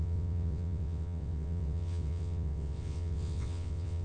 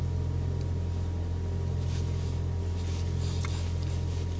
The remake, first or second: first